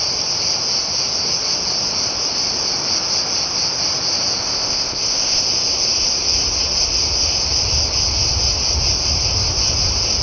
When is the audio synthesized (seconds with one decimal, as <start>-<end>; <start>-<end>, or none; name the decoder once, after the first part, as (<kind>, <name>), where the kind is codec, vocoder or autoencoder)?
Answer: 4.4-5.4 (codec, ZipCodec)

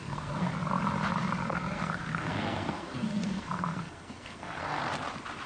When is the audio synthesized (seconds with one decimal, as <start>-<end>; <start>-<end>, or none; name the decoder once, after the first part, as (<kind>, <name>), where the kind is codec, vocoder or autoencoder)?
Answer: 0.0-0.5 (codec, SNAC); 1.5-4.8

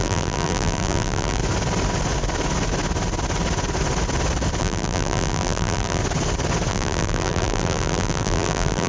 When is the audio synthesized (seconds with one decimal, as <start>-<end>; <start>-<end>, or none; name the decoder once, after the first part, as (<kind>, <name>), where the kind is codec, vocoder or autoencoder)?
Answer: 0.0-1.4 (vocoder, BigVGAN v2); 4.6-6.0; 6.7-8.9

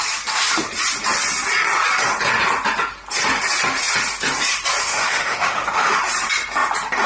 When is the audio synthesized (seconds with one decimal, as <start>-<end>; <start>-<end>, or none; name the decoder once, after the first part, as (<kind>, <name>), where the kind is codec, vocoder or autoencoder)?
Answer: 4.8-6.0 (autoencoder, DAC-VAE)